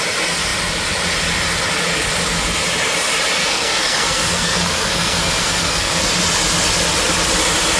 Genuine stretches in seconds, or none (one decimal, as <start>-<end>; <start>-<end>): 0.0-3.4; 6.0-7.8